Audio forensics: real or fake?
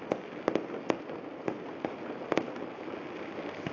real